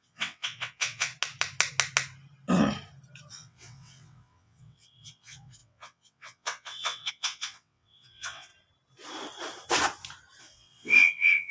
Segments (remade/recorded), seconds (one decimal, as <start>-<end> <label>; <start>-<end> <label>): 0.0-1.1 remade; 1.1-3.3 recorded; 3.3-8.5 remade; 8.5-10.4 recorded; 10.4-11.5 remade